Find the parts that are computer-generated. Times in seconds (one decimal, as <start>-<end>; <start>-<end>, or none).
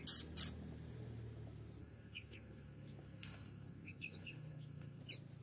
1.8-5.0